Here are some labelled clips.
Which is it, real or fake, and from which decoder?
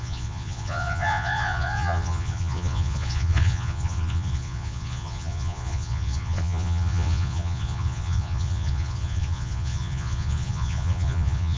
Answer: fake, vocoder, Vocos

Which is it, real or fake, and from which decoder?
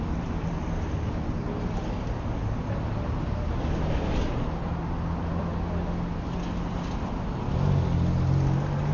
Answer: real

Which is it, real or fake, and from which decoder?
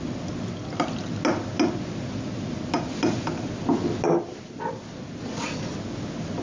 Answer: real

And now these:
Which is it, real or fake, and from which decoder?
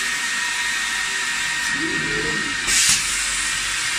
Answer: real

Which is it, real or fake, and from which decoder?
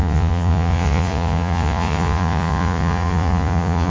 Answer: fake, vocoder, Vocos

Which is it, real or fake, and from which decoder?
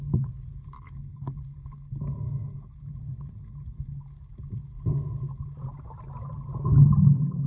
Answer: real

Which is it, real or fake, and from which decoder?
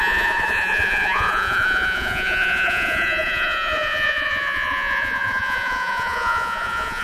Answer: fake, vocoder, Vocos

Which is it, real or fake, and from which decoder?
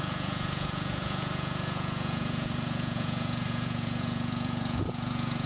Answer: fake, vocoder, Vocos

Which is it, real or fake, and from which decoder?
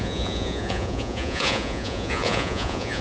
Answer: fake, vocoder, Vocos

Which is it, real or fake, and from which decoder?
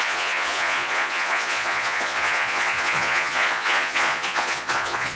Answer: fake, vocoder, Vocos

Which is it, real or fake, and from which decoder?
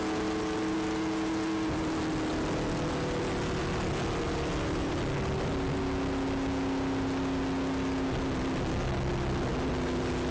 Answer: real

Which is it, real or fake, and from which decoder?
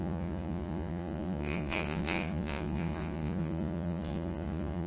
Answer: fake, vocoder, Vocos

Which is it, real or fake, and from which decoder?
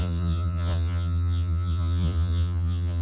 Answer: fake, vocoder, Vocos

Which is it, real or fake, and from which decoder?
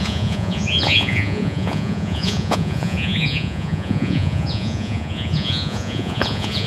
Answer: fake, vocoder, Vocos